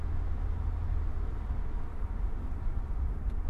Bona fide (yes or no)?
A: yes